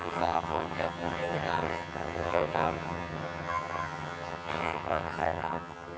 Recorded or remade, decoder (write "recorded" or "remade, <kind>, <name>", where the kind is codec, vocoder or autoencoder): remade, vocoder, HiFi-GAN